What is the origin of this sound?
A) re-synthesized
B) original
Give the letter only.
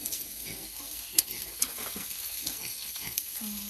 A